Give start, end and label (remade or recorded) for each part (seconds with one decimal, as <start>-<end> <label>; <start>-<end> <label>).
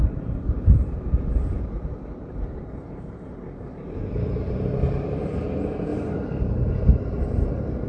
0.0-4.7 remade; 4.7-5.9 recorded; 5.9-6.9 remade; 6.9-7.9 recorded